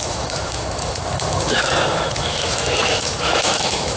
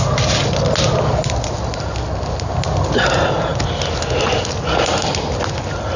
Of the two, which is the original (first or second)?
second